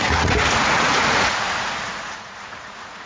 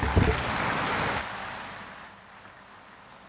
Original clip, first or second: second